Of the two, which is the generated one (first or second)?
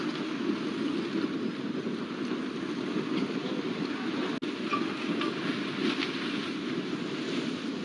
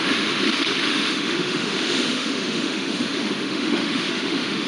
second